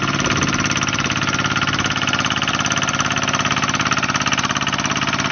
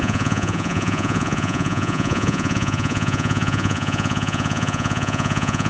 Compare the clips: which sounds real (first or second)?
first